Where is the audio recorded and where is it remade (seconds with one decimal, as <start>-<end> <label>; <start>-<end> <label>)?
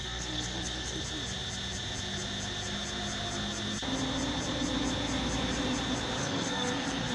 0.0-1.0 remade; 1.0-6.2 recorded; 6.2-7.1 remade